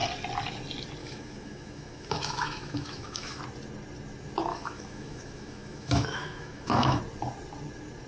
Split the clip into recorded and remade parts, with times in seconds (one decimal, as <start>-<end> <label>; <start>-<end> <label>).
0.0-1.0 recorded; 1.0-3.4 remade; 3.4-4.5 recorded; 4.5-7.0 remade; 7.0-8.1 recorded